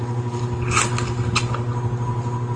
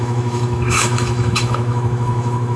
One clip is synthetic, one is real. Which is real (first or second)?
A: first